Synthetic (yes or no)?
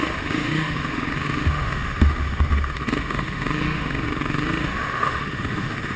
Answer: yes